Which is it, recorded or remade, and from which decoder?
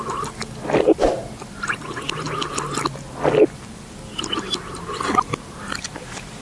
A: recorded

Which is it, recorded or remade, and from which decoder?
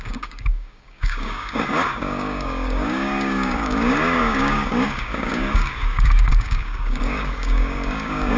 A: remade, codec, DAC